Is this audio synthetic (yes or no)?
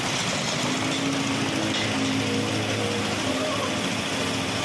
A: no